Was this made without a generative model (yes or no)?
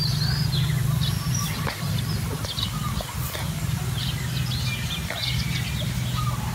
yes